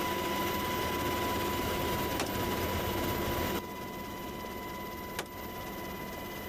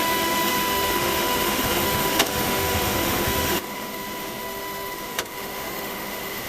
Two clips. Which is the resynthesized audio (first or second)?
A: second